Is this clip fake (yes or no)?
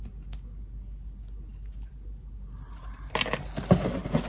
no